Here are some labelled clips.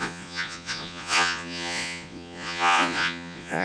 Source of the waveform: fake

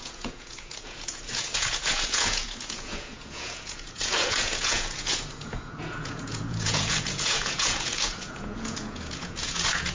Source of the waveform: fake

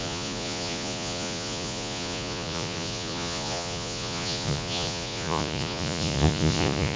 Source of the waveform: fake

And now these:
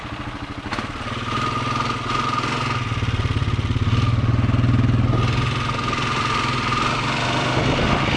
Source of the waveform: real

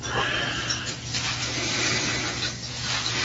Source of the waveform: real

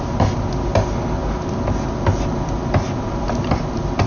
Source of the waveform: real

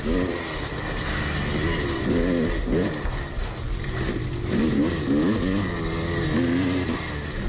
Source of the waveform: real